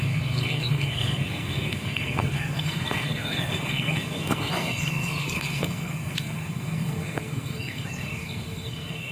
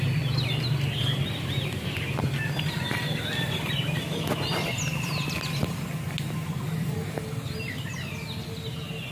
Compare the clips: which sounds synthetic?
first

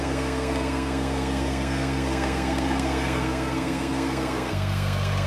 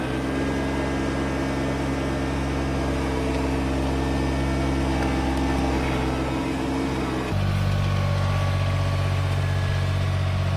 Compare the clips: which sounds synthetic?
first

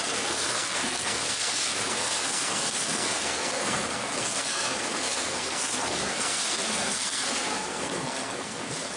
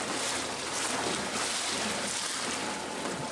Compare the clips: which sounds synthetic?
first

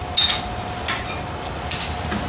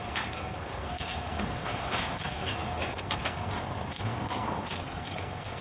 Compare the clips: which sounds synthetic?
second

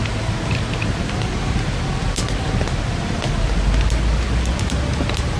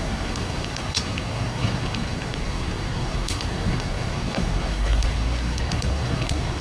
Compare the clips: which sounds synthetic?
second